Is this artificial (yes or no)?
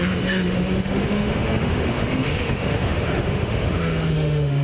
yes